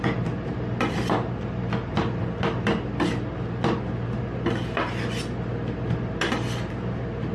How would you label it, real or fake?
real